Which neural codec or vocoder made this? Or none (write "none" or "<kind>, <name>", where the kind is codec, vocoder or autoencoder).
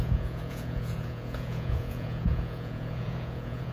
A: vocoder, Vocos